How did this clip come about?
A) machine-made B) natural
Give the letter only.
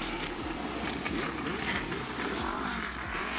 A